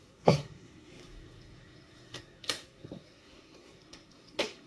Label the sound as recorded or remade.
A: remade